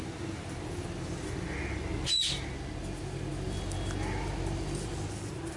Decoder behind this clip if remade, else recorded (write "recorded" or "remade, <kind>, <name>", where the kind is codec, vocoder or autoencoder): recorded